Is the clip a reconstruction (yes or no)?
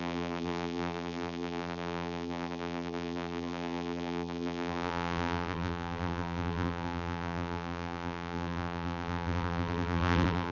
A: yes